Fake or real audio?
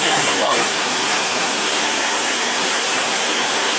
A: fake